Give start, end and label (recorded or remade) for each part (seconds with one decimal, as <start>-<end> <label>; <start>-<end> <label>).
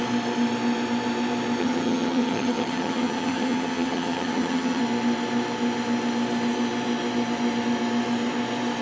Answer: 0.0-1.6 recorded; 1.6-4.8 remade; 4.8-8.8 recorded